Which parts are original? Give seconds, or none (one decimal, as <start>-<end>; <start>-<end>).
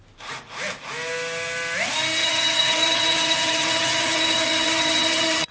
0.0-2.2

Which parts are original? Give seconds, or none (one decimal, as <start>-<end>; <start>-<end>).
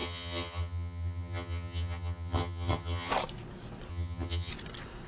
3.1-3.9; 4.5-5.1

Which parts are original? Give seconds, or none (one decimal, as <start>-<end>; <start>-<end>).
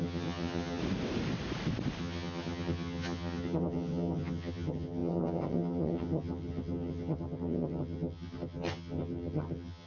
0.8-2.0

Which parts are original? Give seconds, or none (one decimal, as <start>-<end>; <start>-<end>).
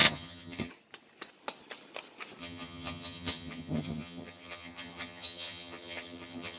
0.7-2.4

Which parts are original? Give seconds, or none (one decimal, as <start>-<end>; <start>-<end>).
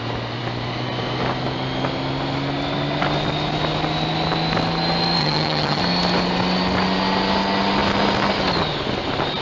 0.0-5.2; 5.8-9.4